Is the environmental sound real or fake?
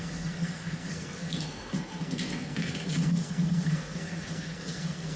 fake